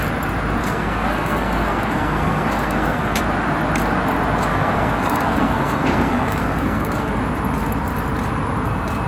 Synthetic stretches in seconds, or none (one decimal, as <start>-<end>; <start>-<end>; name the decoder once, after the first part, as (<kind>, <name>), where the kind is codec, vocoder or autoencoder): 0.6-3.2 (codec, SNAC); 4.5-7.1